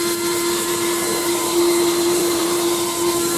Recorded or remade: remade